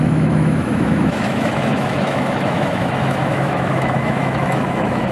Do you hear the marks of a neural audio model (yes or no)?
yes